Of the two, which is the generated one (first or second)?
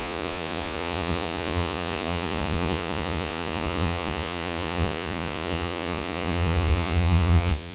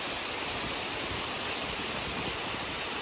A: first